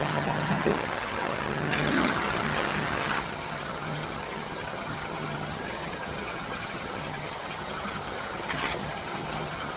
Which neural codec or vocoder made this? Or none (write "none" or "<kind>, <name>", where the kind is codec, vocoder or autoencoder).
vocoder, HiFi-GAN